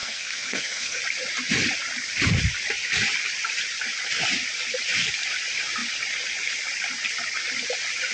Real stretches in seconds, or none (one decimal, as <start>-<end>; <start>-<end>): 1.0-8.1